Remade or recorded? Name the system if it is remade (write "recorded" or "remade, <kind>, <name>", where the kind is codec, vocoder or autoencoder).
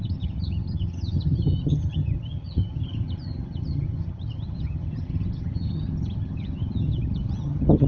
remade, vocoder, HiFi-GAN